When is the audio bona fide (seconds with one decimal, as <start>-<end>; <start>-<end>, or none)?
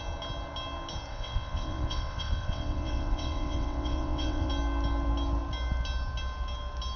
0.0-1.1; 4.5-7.0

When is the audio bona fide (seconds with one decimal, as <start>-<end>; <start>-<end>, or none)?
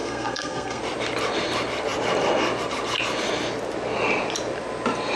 0.8-5.2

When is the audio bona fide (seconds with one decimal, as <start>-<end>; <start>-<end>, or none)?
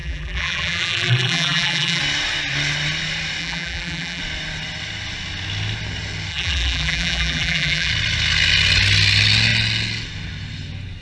2.0-3.4; 4.2-6.3; 7.9-11.0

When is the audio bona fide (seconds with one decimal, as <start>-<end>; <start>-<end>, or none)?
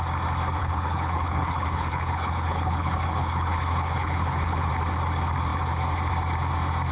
0.0-0.6; 4.7-6.9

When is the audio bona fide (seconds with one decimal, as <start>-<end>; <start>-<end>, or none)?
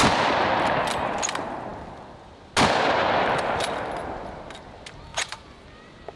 0.0-5.1; 5.6-6.2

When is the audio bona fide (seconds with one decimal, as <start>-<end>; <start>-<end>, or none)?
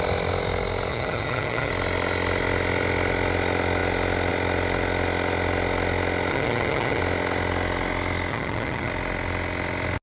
0.0-0.9; 1.7-6.3; 7.0-8.3; 8.9-10.0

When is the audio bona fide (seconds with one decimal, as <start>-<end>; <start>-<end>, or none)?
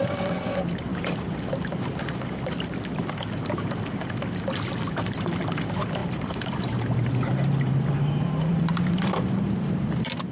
0.0-0.9; 1.6-6.0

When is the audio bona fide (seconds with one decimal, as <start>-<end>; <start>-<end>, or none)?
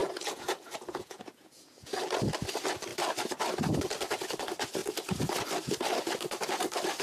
2.0-7.0